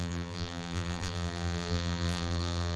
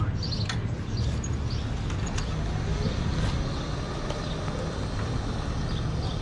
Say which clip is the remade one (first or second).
first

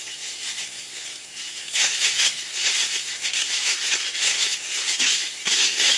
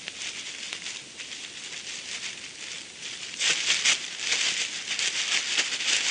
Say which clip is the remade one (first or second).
first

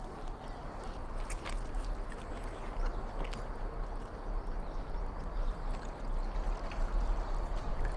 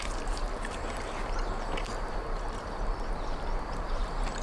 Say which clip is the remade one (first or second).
second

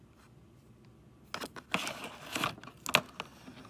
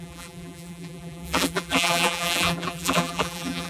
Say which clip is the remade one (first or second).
second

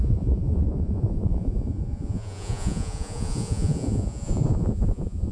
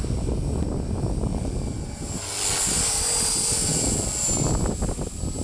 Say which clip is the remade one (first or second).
first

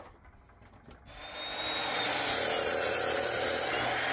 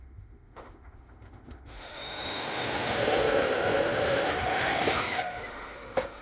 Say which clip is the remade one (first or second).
second